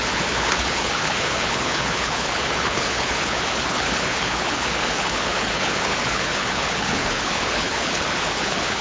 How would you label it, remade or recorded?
remade